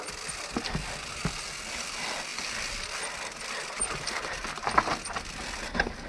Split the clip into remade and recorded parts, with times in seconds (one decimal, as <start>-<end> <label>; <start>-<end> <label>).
0.0-6.1 recorded